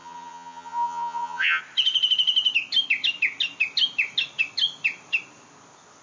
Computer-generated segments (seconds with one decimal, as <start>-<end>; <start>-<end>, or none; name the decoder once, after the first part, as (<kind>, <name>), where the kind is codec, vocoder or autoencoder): 0.0-1.6 (vocoder, HiFi-GAN)